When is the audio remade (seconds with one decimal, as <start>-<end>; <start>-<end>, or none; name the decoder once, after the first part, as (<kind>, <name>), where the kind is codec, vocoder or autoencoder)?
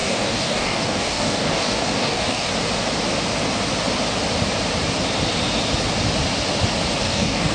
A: 0.0-2.5 (codec, DAC); 7.0-7.5